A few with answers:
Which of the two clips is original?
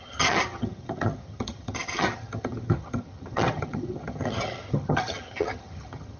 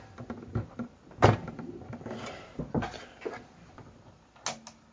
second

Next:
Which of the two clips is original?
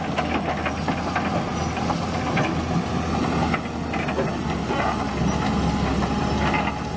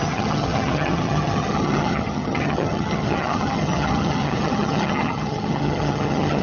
first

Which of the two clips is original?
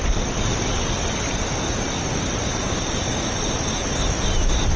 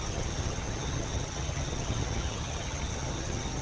first